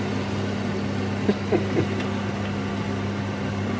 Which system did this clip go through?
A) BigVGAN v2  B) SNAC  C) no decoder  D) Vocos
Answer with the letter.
C